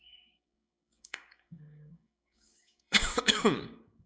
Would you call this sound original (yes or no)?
no